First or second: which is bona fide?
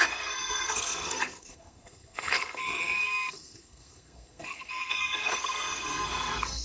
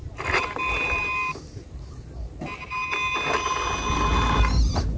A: second